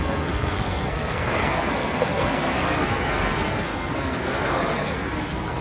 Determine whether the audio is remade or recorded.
remade